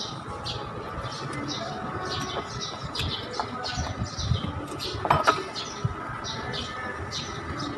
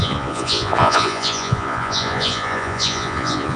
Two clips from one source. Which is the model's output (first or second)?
second